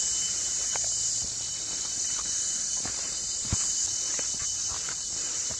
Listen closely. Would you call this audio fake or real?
real